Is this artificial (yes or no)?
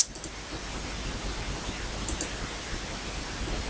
no